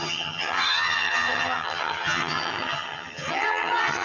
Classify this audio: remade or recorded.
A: remade